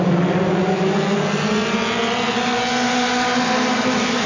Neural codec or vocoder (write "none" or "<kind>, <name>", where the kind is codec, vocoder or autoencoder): none